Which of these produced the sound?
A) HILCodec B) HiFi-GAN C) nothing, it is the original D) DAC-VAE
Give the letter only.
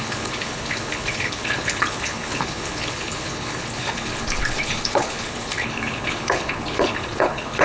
A